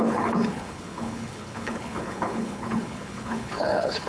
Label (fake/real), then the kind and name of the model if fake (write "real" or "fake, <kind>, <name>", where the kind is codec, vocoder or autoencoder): fake, codec, HILCodec